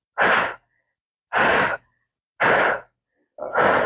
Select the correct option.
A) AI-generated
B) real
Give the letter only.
B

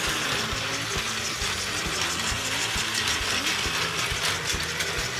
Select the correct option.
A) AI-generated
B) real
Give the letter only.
B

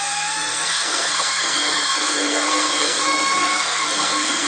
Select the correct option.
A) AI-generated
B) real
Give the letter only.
A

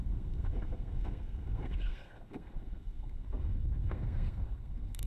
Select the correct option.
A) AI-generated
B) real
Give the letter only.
A